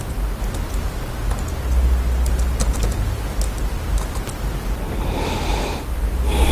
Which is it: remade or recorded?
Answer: recorded